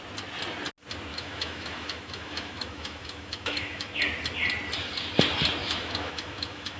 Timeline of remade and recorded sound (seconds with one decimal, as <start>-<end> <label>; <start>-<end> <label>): 0.0-1.1 recorded; 1.1-4.0 remade; 4.0-5.6 recorded; 5.6-6.8 remade